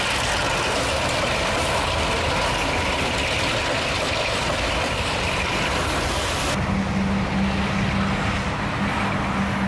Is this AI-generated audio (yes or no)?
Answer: no